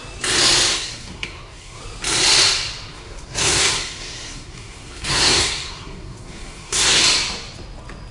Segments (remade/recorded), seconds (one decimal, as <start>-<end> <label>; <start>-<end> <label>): 0.0-0.7 recorded; 0.7-1.8 remade; 1.8-2.9 recorded; 2.9-7.0 remade; 7.0-8.1 recorded